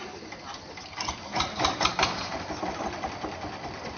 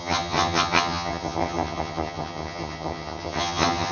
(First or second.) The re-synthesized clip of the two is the second